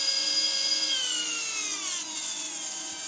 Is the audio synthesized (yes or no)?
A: yes